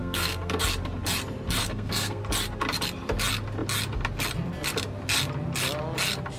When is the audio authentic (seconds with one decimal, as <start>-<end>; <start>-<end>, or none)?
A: 0.6-1.6; 2.2-6.4